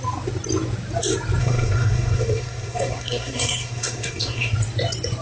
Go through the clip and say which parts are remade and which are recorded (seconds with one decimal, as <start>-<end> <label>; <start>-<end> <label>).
0.0-1.4 recorded; 1.4-4.5 remade; 4.5-5.2 recorded